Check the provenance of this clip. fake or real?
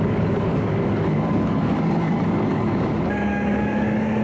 fake